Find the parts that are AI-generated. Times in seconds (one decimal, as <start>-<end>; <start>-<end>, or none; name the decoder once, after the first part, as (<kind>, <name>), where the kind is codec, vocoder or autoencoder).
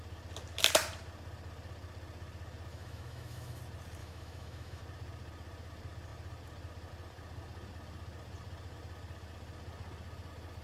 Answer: 2.7-3.6 (autoencoder, DAC-VAE); 4.0-4.8